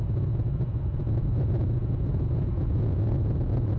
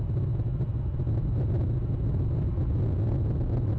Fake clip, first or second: first